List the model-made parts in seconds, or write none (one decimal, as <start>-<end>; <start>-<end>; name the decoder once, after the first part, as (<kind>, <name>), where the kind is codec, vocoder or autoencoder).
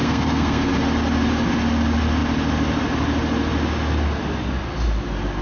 0.0-0.7 (codec, SNAC)